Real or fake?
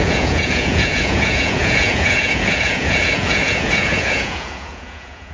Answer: fake